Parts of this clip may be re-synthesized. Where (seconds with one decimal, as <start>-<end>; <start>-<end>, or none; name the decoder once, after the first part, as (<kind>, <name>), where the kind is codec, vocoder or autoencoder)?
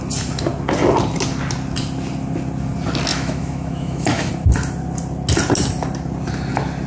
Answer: 3.1-4.3 (autoencoder, DAC-VAE)